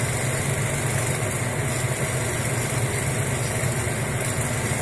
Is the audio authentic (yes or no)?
yes